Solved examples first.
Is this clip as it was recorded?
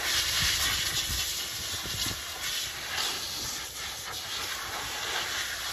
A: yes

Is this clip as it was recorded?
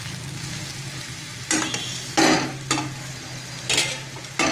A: yes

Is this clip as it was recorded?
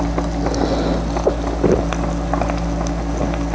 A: yes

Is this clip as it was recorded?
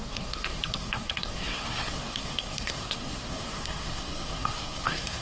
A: no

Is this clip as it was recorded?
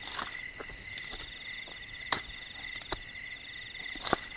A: yes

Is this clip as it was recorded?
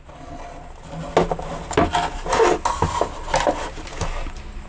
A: yes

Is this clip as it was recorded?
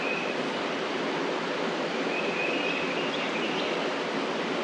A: yes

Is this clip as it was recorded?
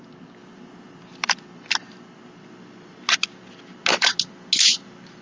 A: yes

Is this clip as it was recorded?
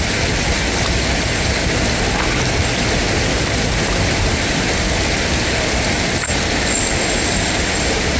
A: yes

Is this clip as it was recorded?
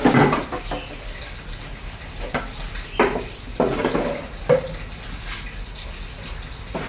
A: yes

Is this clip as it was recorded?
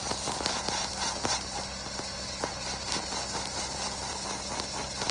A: yes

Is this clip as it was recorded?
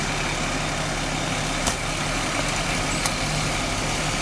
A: yes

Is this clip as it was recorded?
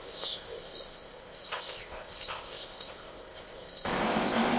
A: no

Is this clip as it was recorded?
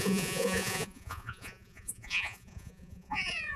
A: no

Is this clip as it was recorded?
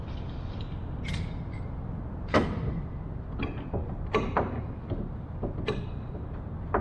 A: no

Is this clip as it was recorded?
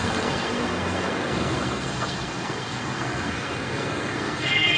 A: no